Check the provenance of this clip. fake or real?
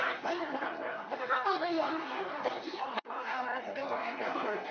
fake